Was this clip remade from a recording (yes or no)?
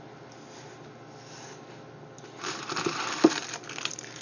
no